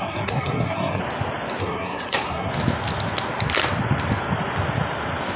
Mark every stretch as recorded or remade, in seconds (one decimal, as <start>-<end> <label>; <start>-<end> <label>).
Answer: 0.0-1.0 remade; 1.0-1.6 recorded; 1.6-2.5 remade; 2.5-5.4 recorded

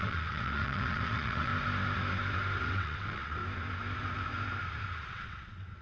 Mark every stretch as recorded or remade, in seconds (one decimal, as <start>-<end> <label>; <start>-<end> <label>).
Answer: 0.0-1.5 remade; 1.5-2.6 recorded; 2.6-3.4 remade; 3.4-5.1 recorded; 5.1-5.8 remade

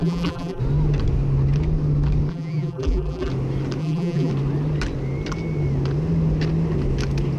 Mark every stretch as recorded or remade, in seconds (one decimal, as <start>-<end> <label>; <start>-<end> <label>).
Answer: 0.0-0.6 remade; 0.6-2.3 recorded; 2.3-3.3 remade; 3.3-3.8 recorded; 3.8-4.3 remade; 4.3-7.4 recorded

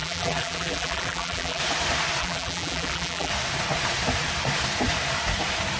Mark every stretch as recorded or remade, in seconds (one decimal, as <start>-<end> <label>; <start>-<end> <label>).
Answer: 0.0-1.6 remade; 1.6-2.2 recorded; 2.2-3.3 remade; 3.3-5.8 recorded

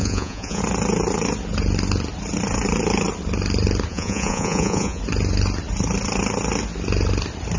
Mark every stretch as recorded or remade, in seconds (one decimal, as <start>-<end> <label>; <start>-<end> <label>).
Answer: 0.0-0.6 remade; 0.6-3.9 recorded; 3.9-5.0 remade; 5.0-7.6 recorded

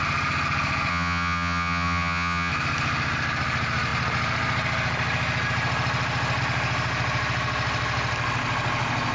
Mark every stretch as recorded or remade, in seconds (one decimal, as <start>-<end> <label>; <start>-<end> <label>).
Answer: 0.0-0.9 recorded; 0.9-2.5 remade; 2.5-9.1 recorded

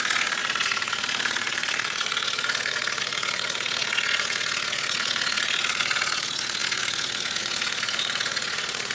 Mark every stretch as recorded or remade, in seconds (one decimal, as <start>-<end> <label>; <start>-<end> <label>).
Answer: 0.0-8.9 remade

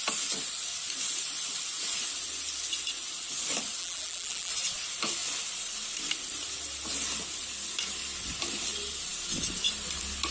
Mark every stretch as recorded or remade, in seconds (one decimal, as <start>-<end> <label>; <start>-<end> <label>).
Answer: 0.0-3.8 recorded; 3.8-4.5 remade; 4.5-10.3 recorded